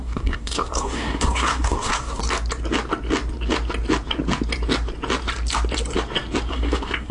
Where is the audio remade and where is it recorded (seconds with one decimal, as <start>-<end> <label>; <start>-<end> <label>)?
0.0-2.2 remade; 2.2-6.5 recorded; 6.5-7.1 remade